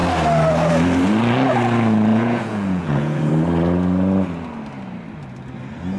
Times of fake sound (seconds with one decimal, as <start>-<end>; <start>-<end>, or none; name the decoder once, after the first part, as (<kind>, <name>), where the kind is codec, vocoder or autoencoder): 2.1-3.3 (vocoder, Vocos)